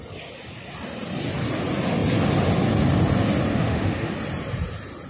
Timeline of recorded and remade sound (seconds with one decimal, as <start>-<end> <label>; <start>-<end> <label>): 0.0-3.5 recorded; 3.5-4.1 remade; 4.1-5.1 recorded